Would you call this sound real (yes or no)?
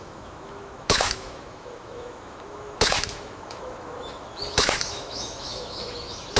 no